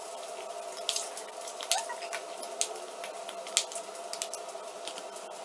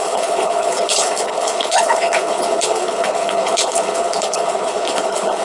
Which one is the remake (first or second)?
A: second